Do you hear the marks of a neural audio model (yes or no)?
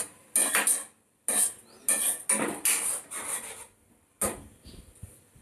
no